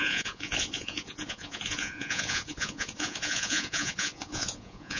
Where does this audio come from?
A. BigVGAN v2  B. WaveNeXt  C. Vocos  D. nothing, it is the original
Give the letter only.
C